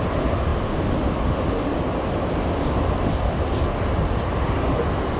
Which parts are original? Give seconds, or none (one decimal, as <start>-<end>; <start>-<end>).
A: 0.0-5.2